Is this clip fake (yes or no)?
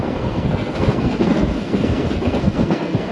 yes